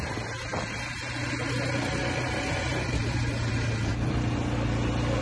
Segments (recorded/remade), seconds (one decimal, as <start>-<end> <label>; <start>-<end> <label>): 0.0-5.2 recorded